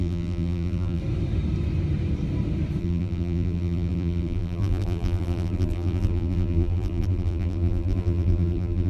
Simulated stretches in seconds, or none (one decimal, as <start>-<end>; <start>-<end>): 0.0-1.0; 2.8-8.9

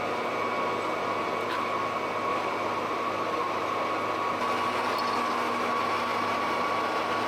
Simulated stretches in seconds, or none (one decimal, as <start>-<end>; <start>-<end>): 2.3-3.8; 6.1-6.7

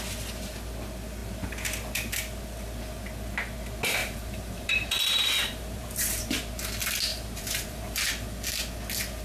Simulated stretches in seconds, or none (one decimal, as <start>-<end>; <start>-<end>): 4.0-6.2; 7.1-8.1

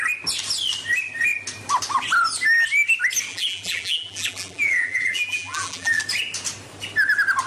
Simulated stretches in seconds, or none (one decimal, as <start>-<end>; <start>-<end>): 3.3-6.0

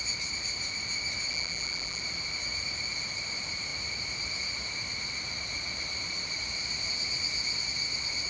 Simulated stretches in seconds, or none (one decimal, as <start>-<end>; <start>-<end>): 1.3-2.0